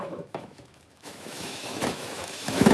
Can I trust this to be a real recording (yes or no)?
no